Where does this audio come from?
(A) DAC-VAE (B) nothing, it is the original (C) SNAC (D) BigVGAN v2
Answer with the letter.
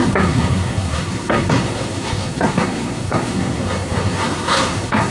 C